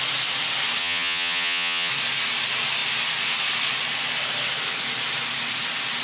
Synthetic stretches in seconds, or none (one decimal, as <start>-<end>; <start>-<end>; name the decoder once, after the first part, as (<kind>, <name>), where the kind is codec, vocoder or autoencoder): 0.8-1.9 (vocoder, HiFi-GAN)